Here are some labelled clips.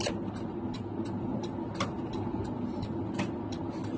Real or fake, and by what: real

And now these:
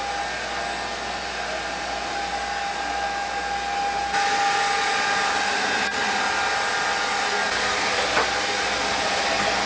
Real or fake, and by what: real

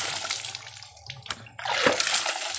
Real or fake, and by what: real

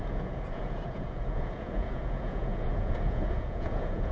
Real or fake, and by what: fake, vocoder, Vocos